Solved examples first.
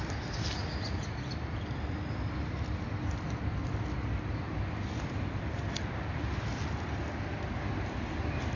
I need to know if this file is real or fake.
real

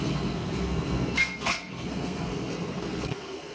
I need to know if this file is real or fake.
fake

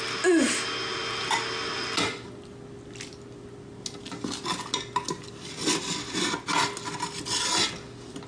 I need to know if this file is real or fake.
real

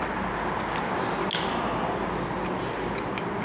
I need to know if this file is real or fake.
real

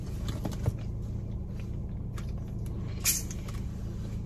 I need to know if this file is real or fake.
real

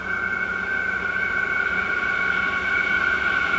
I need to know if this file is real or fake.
real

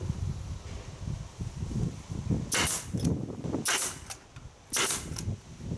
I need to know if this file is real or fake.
real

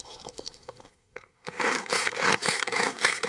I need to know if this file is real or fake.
fake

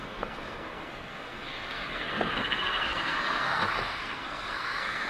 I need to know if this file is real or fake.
fake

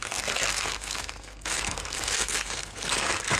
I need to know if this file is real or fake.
fake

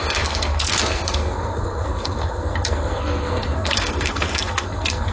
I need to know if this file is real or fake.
fake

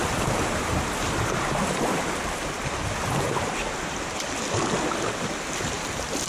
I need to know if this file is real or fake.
real